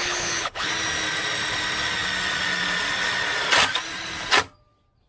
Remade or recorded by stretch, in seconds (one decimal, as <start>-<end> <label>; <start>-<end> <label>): 0.0-0.7 remade; 0.7-5.1 recorded